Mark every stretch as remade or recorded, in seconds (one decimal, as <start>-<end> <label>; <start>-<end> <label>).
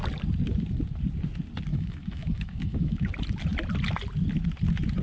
0.0-1.7 recorded; 1.7-3.1 remade; 3.1-5.0 recorded